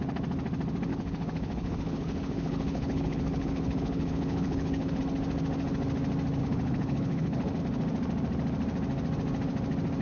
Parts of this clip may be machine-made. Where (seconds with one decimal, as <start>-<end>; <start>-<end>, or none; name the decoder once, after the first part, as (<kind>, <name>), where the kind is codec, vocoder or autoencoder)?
0.9-5.0 (codec, HILCodec); 6.4-7.6